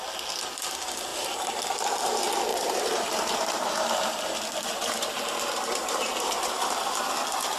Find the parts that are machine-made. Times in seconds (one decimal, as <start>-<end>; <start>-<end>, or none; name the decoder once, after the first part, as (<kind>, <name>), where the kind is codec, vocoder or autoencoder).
1.1-1.6 (vocoder, BigVGAN v2); 2.5-7.1